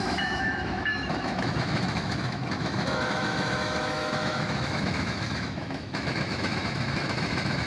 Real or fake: fake